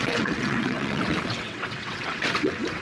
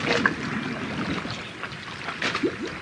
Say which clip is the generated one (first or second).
first